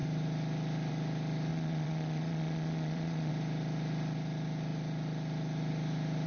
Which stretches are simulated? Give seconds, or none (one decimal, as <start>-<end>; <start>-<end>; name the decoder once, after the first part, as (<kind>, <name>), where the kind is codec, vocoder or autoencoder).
1.5-3.3 (vocoder, Vocos)